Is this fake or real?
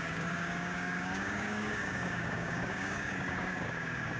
fake